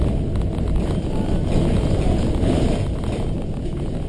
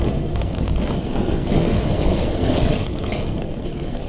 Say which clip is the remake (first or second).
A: second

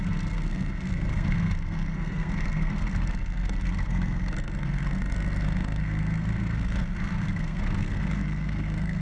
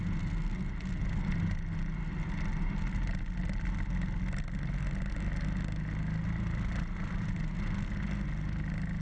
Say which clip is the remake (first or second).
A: first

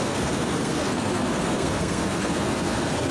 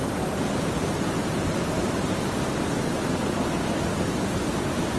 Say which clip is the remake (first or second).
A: first